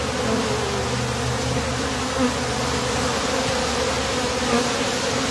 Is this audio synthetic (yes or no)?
no